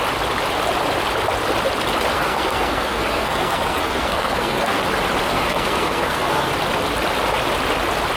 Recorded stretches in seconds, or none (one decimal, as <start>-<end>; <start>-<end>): 0.0-2.1; 4.8-5.2; 6.5-8.2

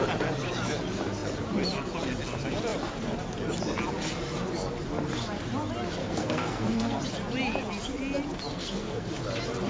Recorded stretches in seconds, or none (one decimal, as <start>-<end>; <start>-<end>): 0.0-6.0; 7.0-8.5; 9.1-9.7

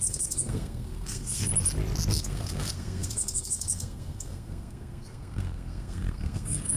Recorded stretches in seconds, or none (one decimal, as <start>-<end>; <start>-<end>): 1.5-2.1

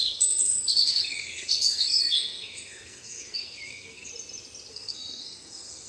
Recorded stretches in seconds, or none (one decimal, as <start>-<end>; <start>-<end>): 4.1-4.7

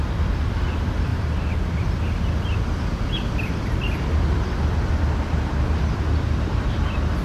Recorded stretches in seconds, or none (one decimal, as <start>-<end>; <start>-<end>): 0.0-7.2

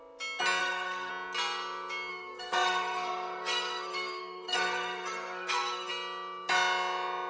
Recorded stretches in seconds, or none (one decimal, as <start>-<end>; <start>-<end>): 0.0-0.6; 1.1-2.1; 5.9-7.3